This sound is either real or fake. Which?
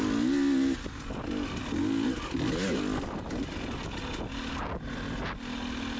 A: real